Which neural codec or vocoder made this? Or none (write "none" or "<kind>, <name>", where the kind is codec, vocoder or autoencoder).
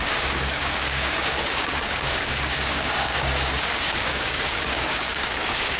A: codec, DAC